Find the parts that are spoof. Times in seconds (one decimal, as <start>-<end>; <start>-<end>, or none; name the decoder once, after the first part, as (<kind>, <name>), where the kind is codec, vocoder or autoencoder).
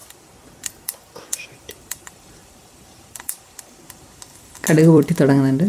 0.0-3.4 (vocoder, BigVGAN v2); 4.8-5.7